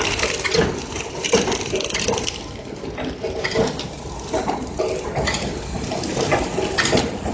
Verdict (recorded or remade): recorded